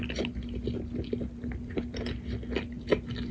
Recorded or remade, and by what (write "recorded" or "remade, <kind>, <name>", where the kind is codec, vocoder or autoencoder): recorded